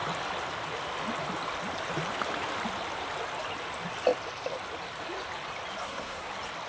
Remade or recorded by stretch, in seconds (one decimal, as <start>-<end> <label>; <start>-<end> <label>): 0.0-5.8 recorded; 5.8-6.3 remade; 6.3-6.7 recorded